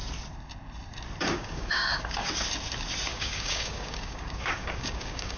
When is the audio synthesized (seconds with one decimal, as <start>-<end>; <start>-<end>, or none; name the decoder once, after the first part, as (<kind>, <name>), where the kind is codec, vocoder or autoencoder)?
1.3-2.3 (codec, DAC); 3.1-5.4